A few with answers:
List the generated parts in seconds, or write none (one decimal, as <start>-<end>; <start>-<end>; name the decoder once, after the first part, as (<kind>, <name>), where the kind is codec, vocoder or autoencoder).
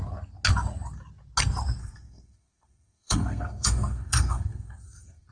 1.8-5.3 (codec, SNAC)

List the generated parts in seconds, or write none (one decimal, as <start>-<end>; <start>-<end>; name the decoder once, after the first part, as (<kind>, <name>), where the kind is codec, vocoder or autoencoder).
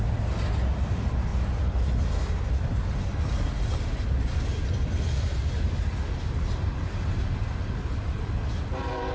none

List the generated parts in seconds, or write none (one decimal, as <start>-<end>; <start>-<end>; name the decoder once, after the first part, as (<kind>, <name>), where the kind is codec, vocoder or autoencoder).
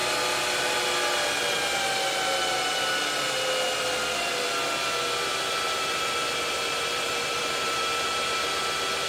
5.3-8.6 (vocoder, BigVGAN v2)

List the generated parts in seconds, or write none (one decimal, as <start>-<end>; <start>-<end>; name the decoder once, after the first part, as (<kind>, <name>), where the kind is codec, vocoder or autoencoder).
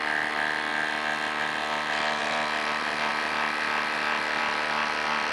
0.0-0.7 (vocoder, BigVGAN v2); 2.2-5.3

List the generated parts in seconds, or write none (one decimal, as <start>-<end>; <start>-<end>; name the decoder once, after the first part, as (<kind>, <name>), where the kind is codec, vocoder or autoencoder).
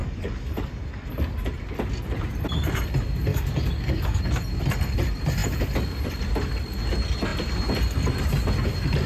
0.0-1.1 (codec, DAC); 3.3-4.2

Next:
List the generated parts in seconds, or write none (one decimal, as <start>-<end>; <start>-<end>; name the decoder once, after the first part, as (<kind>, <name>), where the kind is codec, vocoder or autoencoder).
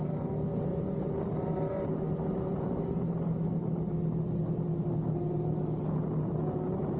0.7-1.7 (vocoder, BigVGAN v2)